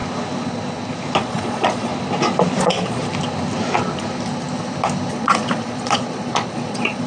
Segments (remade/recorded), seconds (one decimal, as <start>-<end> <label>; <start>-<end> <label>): 0.0-1.2 recorded; 1.2-1.9 remade; 1.9-2.6 recorded; 2.6-3.0 remade; 3.0-5.1 recorded; 5.1-7.1 remade